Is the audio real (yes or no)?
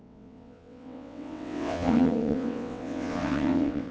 no